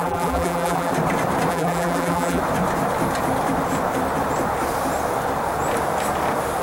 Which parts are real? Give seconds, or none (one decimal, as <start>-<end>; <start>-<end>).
0.9-1.5; 2.4-6.6

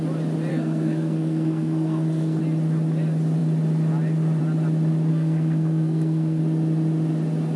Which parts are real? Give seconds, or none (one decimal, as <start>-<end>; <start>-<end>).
0.0-0.5; 2.4-5.1; 6.4-7.6

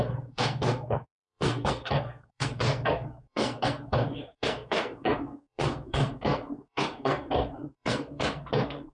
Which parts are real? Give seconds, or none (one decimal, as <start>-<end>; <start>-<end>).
none

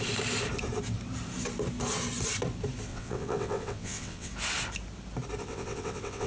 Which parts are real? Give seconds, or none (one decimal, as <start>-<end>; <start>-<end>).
0.0-2.9; 4.3-5.4